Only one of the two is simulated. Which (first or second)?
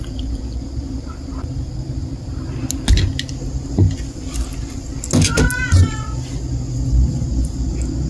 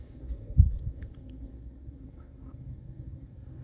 second